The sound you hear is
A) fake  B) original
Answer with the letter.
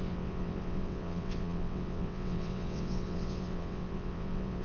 A